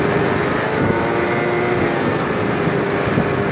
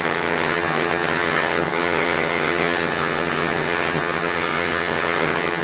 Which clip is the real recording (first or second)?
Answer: first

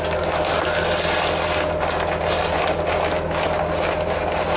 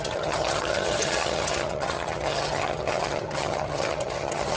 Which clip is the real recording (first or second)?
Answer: first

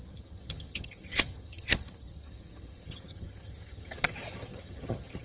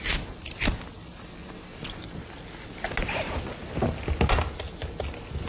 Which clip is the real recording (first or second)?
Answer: second